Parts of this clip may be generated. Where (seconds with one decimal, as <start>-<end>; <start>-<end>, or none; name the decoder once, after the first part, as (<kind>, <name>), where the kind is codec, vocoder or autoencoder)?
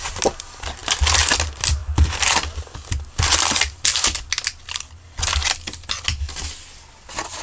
none